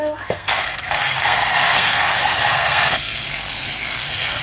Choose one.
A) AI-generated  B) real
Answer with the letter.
A